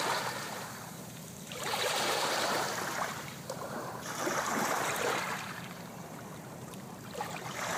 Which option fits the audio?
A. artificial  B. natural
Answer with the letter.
A